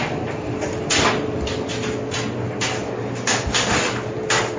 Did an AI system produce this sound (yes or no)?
no